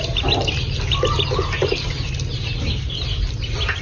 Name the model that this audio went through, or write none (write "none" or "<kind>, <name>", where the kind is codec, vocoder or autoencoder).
none